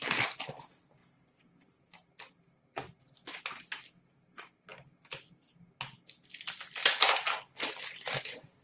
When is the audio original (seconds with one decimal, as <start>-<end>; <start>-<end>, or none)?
0.0-8.6